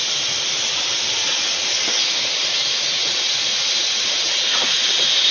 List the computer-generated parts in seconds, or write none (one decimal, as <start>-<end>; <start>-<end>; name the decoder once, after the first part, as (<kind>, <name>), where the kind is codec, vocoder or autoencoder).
2.0-5.3 (vocoder, Vocos)